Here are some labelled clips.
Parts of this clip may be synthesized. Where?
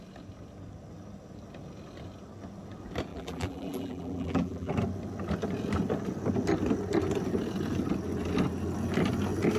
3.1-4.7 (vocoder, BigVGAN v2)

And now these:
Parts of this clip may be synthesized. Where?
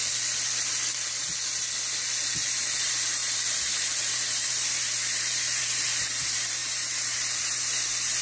2.8-8.2 (vocoder, BigVGAN v2)